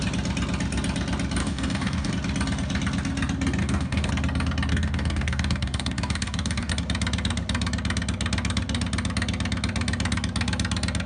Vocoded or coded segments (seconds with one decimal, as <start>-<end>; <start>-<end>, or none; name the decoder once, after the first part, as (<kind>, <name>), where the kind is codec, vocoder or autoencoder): 1.4-2.1 (codec, DAC); 3.6-4.1; 4.7-6.7

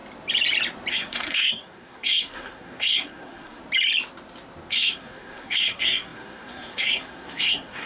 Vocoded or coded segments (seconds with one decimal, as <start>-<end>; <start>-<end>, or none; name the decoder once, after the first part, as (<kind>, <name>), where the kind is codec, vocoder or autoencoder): 0.9-3.6 (codec, SNAC); 4.7-7.9